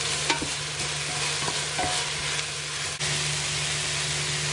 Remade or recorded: recorded